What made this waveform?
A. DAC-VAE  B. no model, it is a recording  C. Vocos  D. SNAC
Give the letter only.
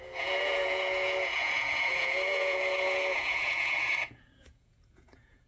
C